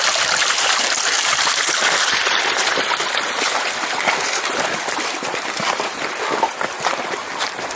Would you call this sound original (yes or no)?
yes